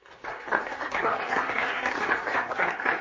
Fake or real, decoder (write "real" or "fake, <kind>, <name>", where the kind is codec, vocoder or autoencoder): fake, codec, SNAC